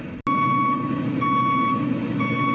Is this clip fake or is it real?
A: real